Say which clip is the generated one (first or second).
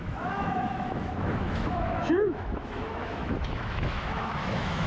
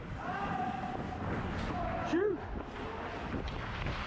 first